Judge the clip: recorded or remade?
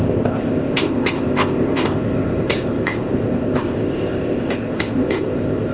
remade